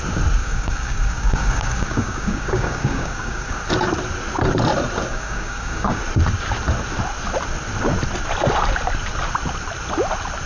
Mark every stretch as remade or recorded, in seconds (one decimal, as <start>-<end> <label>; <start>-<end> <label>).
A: 0.0-0.4 recorded; 0.4-3.7 remade; 3.7-5.1 recorded; 5.1-6.0 remade; 6.0-10.5 recorded